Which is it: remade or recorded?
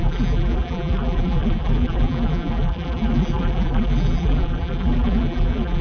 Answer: remade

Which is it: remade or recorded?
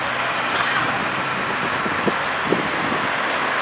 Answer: recorded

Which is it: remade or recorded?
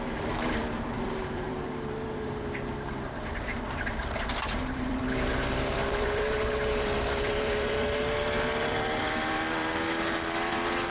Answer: remade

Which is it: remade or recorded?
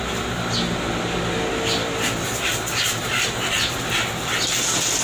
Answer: recorded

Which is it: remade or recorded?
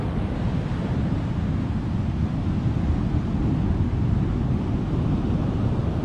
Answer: recorded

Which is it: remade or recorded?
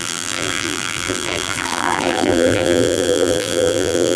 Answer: remade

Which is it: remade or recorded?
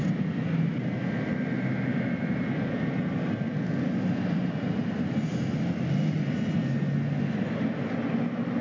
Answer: recorded